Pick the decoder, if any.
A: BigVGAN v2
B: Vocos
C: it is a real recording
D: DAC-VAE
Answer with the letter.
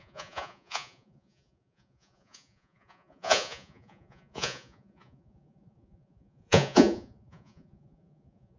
B